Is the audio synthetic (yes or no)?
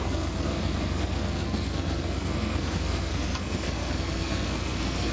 yes